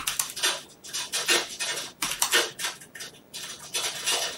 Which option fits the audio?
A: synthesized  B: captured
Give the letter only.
B